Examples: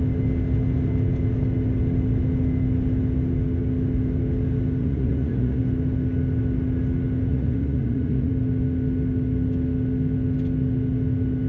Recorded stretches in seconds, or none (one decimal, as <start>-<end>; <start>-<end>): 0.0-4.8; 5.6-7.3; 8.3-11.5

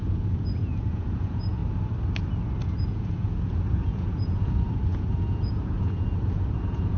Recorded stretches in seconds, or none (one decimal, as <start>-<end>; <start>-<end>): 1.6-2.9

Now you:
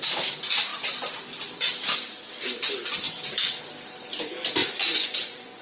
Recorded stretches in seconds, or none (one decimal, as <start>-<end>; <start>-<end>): 0.0-4.6

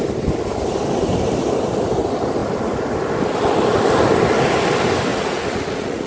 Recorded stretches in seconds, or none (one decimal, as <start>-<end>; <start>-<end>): 0.0-5.1

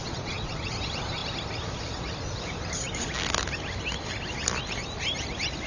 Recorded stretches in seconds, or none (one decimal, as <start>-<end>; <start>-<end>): 0.7-5.7

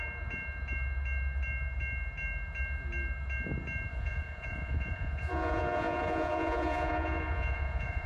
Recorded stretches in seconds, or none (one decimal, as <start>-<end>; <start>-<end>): 0.0-3.9